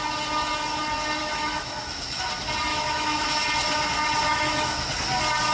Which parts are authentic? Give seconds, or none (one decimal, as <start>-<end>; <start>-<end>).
0.0-1.2; 2.2-2.7; 3.4-4.3; 4.9-5.5